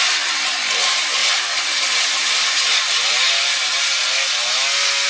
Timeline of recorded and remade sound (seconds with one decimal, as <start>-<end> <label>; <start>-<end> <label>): 0.0-5.1 recorded